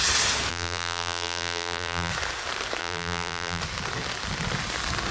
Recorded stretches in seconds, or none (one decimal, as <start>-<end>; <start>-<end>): 0.0-0.5; 2.1-2.8; 3.6-5.1